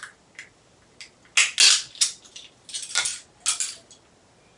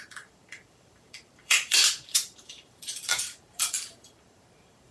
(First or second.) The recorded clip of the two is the first